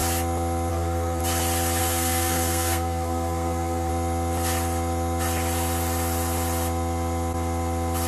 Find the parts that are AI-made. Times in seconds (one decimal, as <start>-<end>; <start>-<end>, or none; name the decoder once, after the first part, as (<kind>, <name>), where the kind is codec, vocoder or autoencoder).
0.7-1.2 (codec, SNAC); 1.8-3.9